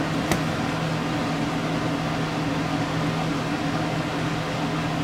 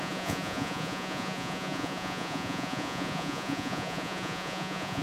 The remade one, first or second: second